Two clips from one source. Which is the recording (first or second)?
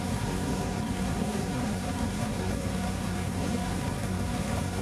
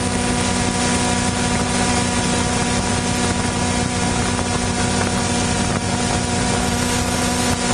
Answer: second